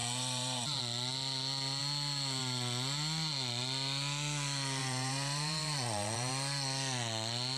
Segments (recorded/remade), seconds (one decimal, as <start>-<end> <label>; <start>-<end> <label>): 0.0-0.8 remade; 0.8-4.8 recorded; 4.8-6.3 remade; 6.3-7.6 recorded